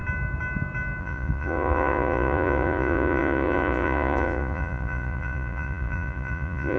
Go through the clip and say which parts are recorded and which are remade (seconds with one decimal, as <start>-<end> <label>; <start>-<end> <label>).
0.0-1.0 recorded; 1.0-6.8 remade